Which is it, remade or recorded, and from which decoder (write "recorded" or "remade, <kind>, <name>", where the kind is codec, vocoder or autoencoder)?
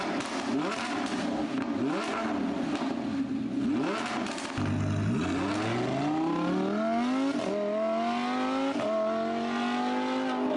recorded